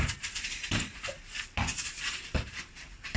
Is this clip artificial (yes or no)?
yes